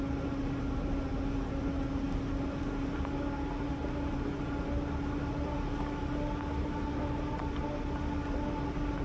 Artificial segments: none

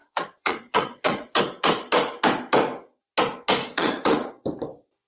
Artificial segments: 0.0-1.4 (vocoder, Vocos); 3.6-4.3

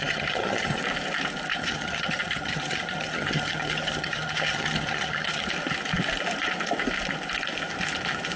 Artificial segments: 0.0-0.8 (vocoder, HiFi-GAN); 1.5-5.5

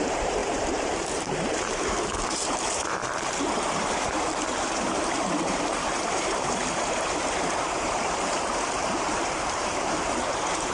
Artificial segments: 0.0-10.7 (vocoder, BigVGAN v2)

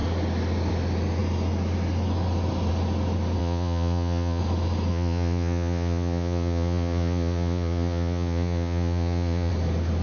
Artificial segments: 3.4-4.4 (vocoder, Vocos); 4.9-9.5

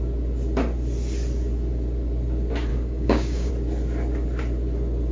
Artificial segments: 2.7-3.5 (codec, DAC)

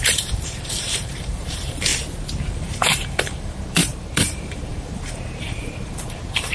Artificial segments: 0.0-1.9 (vocoder, BigVGAN v2); 2.5-6.5

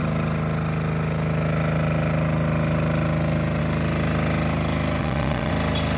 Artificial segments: 5.0-5.5 (vocoder, Vocos)